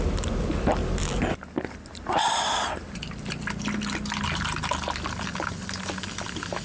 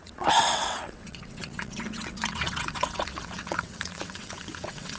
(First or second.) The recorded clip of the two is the first